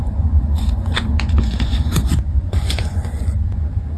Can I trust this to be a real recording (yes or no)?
no